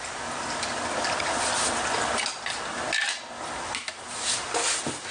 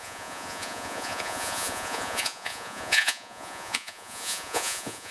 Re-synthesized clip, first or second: second